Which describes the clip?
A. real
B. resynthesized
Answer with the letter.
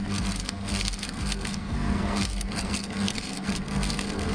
B